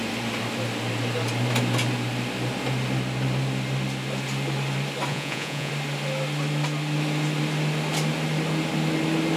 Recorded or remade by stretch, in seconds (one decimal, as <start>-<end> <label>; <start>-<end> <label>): 0.0-5.1 recorded; 5.1-5.7 remade; 5.7-9.4 recorded